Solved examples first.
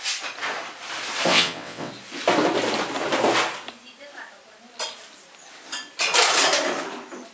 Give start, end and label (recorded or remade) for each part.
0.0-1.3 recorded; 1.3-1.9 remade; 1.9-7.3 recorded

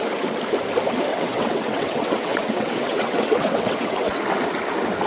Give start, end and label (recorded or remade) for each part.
0.0-1.1 recorded; 1.1-4.2 remade; 4.2-5.1 recorded

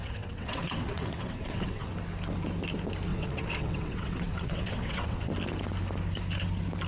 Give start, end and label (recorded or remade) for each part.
0.0-1.9 remade; 1.9-3.1 recorded; 3.1-5.3 remade; 5.3-6.9 recorded